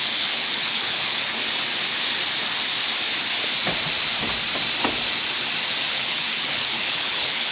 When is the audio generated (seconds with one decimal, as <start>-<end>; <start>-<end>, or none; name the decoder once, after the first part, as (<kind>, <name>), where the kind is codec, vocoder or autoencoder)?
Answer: 0.0-1.4 (codec, HILCodec); 5.9-7.5